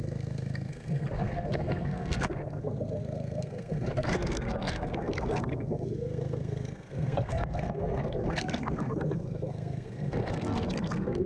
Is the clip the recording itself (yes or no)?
no